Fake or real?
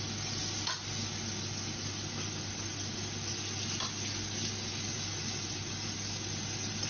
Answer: real